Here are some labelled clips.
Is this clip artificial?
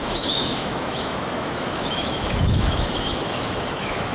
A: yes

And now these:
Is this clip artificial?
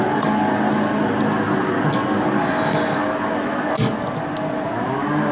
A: no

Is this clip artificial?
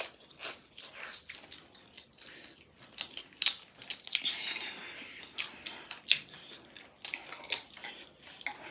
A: no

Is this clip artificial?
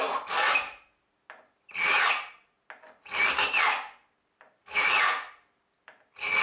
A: no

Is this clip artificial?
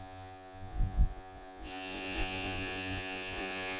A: yes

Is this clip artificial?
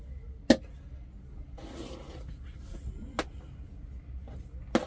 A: no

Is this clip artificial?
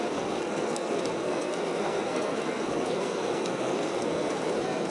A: yes